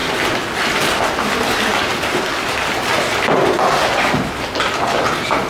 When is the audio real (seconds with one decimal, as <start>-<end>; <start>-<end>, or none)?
2.2-5.5